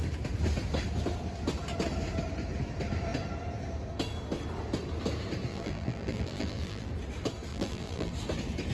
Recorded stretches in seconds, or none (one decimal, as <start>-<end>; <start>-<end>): 0.0-5.5; 6.9-7.5; 8.1-8.7